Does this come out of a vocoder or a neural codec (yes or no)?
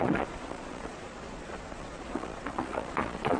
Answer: yes